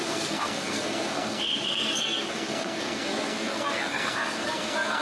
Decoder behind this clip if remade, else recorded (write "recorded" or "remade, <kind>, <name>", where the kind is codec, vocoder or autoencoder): remade, codec, SNAC